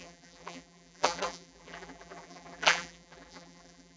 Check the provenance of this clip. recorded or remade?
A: remade